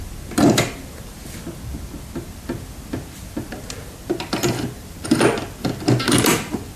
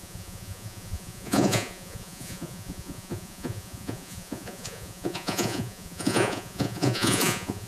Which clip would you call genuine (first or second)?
first